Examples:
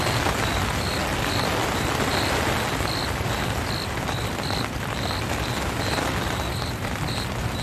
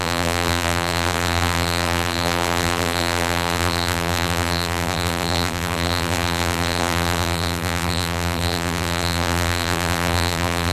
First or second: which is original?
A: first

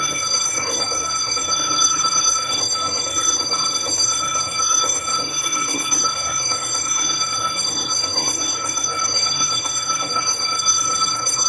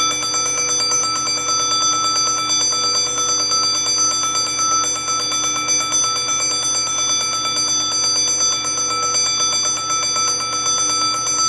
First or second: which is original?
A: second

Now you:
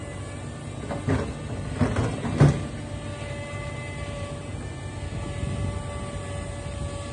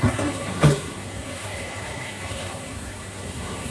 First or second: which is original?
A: first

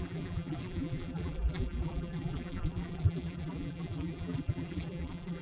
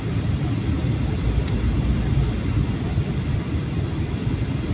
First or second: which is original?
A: second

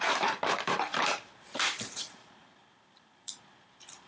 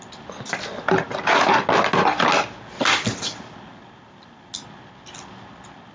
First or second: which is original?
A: second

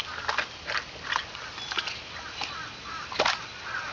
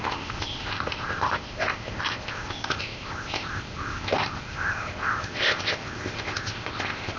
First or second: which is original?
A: first